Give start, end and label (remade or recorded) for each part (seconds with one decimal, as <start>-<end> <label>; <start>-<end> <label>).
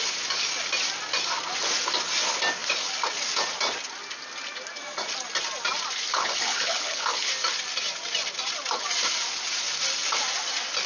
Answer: 0.0-6.1 recorded; 6.1-7.3 remade; 7.3-10.9 recorded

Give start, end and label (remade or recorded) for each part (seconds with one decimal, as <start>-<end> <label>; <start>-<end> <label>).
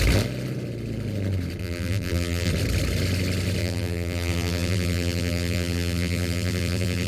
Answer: 0.0-1.6 recorded; 1.6-2.5 remade; 2.5-3.6 recorded; 3.6-7.1 remade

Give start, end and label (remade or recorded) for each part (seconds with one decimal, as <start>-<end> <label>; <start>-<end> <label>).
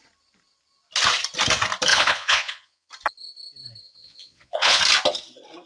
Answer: 0.0-1.9 recorded; 1.9-2.9 remade; 2.9-3.8 recorded; 3.8-4.8 remade; 4.8-5.7 recorded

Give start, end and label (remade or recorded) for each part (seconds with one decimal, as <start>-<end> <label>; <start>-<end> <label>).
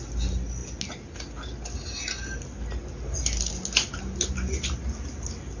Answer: 0.0-5.6 recorded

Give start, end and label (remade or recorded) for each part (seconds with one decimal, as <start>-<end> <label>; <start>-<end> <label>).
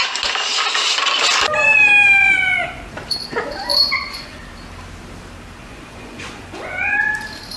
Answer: 0.0-2.2 recorded; 2.2-2.9 remade; 2.9-3.7 recorded; 3.7-4.4 remade; 4.4-5.6 recorded; 5.6-7.0 remade; 7.0-7.6 recorded